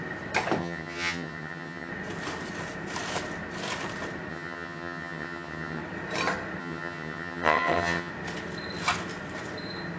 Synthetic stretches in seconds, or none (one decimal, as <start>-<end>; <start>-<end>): 0.6-1.9; 4.3-5.8; 6.6-8.1

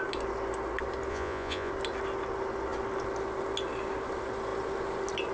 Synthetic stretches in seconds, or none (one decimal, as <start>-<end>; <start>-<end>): 1.1-1.7

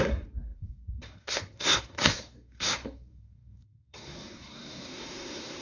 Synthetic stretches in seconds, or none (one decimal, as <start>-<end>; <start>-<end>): 0.0-5.6

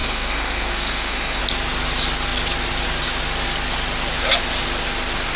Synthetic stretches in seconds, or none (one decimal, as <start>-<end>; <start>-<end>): 0.0-1.4

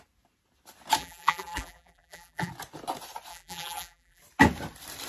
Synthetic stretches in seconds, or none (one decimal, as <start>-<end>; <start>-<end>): 1.0-2.5; 3.3-4.2

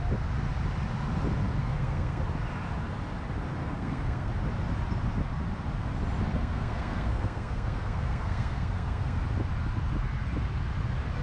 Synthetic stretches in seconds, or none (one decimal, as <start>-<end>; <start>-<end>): 1.6-2.2; 3.6-4.3; 6.3-9.2

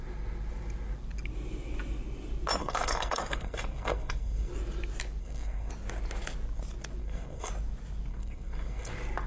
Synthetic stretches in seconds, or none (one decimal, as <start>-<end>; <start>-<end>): 2.6-4.5; 5.2-5.7; 7.0-7.5; 8.1-8.9

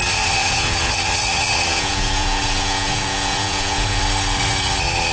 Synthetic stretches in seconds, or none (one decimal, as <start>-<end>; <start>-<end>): 0.4-0.9; 1.7-4.0